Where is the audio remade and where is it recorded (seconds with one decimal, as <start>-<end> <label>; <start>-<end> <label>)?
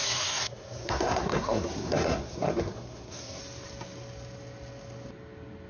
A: 0.0-3.4 remade; 3.4-5.7 recorded